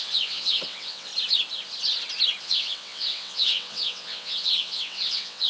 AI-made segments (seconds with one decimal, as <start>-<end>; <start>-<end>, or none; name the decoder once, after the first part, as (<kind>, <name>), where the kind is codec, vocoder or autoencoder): 0.0-1.1 (vocoder, WaveNeXt); 2.4-5.5